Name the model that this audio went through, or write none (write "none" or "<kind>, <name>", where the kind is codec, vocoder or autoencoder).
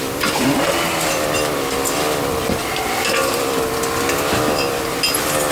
none